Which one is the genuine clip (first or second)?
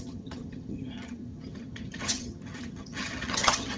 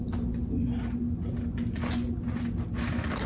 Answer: second